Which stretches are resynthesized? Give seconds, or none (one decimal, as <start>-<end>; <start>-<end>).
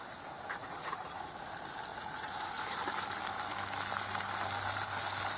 0.6-1.5; 1.9-2.8